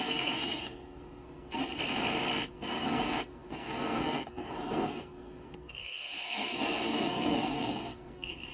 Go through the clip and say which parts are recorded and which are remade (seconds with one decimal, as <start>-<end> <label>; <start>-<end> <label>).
0.0-1.6 remade; 1.6-2.5 recorded; 2.5-8.5 remade

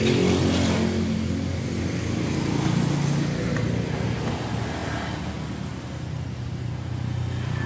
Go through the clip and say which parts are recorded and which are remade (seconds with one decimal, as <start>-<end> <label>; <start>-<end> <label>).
0.0-7.7 recorded

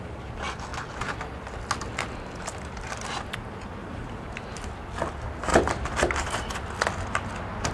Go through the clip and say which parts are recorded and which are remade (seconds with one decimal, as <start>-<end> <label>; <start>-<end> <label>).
0.0-3.8 recorded; 3.8-4.5 remade; 4.5-5.5 recorded; 5.5-6.5 remade; 6.5-7.7 recorded